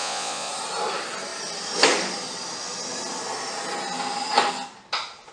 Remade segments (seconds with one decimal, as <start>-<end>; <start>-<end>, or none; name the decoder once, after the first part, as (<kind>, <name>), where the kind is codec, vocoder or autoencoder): 0.0-0.5 (vocoder, Vocos)